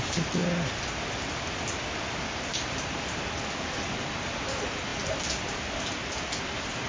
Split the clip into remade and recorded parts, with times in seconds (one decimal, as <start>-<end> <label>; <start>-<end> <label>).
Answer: 0.0-6.9 recorded